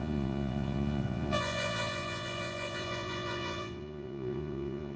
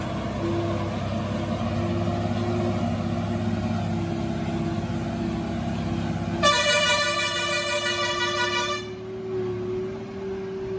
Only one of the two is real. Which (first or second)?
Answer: second